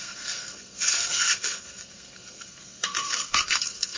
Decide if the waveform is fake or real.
fake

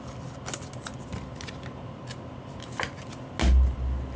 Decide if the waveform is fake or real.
real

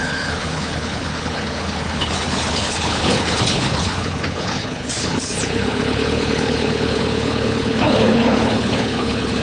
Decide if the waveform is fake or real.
fake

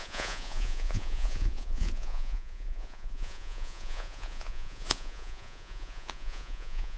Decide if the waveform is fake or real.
fake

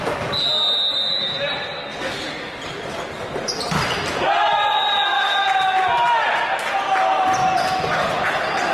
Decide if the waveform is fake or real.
real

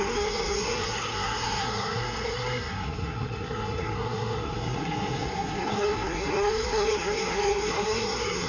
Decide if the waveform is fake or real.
fake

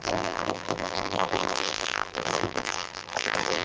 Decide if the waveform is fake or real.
fake